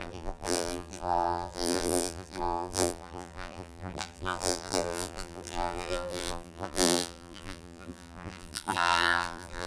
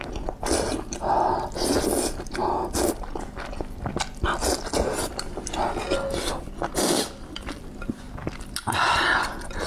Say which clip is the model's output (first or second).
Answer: first